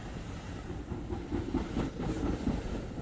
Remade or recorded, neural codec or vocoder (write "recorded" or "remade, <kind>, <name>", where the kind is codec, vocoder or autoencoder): recorded